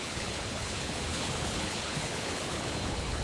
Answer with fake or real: fake